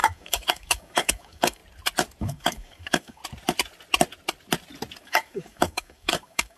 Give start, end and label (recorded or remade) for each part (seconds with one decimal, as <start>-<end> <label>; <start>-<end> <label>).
0.0-1.6 remade; 1.6-2.2 recorded; 2.2-3.2 remade; 3.2-5.0 recorded; 5.0-6.6 remade